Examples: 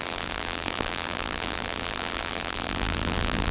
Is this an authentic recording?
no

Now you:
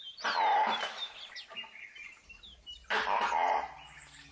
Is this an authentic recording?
yes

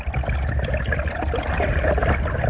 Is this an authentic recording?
yes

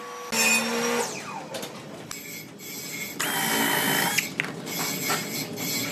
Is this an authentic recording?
yes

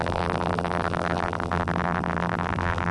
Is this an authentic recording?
no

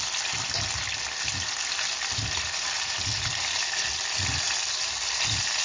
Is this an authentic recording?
yes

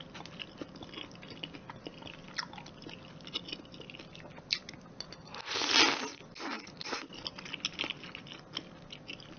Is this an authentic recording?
yes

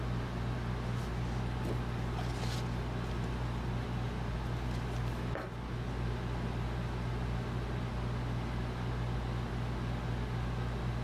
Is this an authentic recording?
yes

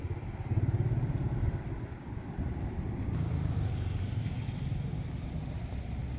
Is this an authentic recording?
no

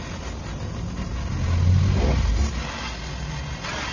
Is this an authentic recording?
yes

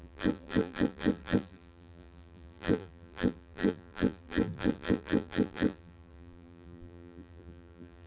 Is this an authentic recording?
no